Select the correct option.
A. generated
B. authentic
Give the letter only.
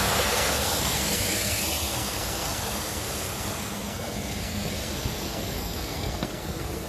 A